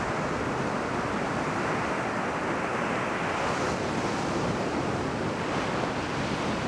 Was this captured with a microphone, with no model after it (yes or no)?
yes